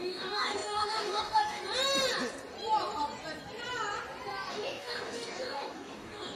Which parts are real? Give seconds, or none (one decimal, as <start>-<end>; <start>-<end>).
1.6-4.5